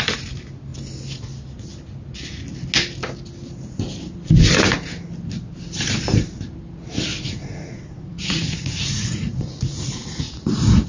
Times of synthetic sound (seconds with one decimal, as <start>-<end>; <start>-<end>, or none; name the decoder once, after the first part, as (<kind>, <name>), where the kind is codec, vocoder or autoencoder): 7.1-10.9 (vocoder, Vocos)